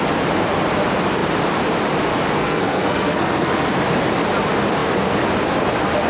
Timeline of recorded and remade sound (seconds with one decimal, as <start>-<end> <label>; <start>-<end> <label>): 0.0-2.4 recorded; 2.4-3.7 remade; 3.7-6.1 recorded